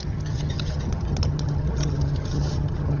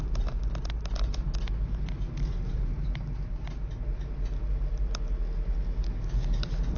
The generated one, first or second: first